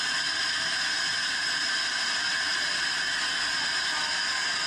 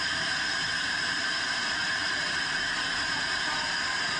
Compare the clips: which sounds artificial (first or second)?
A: second